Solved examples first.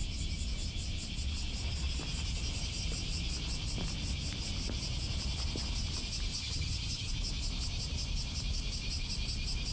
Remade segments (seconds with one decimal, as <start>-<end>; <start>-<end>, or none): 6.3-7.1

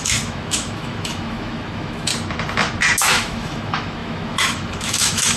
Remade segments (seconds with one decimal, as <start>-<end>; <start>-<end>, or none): 0.0-2.1; 3.0-5.4

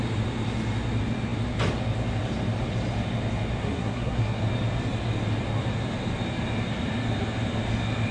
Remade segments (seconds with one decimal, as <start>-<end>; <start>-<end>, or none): 3.6-4.4